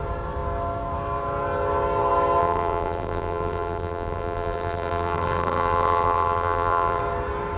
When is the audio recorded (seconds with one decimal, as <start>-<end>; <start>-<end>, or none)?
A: 0.0-2.4; 7.0-7.6